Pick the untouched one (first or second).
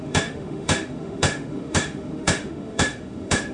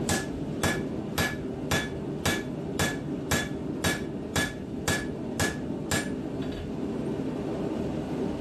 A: second